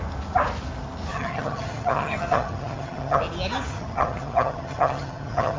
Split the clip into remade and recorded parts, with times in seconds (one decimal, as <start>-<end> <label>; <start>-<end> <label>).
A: 0.0-1.1 recorded; 1.1-3.2 remade; 3.2-3.7 recorded; 3.7-5.6 remade